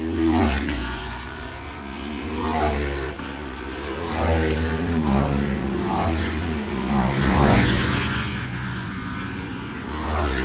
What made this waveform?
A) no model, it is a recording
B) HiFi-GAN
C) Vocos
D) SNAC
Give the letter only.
C